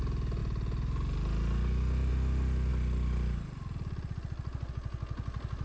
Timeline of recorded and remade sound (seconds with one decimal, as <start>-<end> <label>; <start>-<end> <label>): 0.0-5.6 recorded

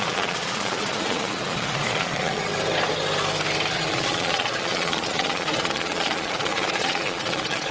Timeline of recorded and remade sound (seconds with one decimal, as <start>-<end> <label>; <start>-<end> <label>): 0.0-2.5 remade; 2.5-3.7 recorded; 3.7-7.7 remade

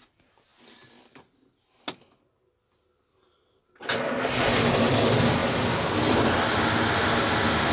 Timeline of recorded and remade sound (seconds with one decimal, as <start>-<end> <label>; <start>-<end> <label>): 0.0-7.7 recorded

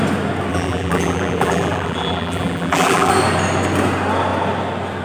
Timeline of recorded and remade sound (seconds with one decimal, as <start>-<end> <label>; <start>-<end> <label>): 0.0-0.5 recorded; 0.5-3.1 remade; 3.1-5.0 recorded

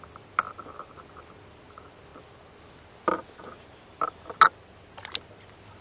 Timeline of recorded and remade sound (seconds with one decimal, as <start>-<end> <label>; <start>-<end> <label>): 0.0-5.8 recorded